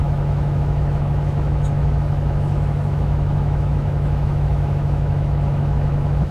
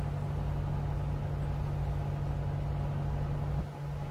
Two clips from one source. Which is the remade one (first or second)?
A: first